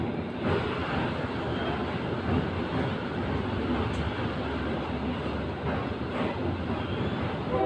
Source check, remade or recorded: recorded